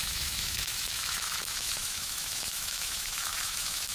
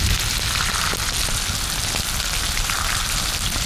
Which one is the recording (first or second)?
second